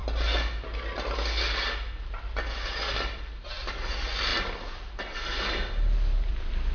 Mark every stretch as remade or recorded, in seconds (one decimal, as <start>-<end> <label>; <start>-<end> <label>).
0.0-6.7 recorded